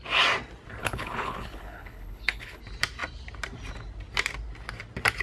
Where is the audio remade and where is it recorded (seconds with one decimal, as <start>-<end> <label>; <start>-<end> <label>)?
0.0-0.8 recorded; 0.8-2.6 remade; 2.6-5.2 recorded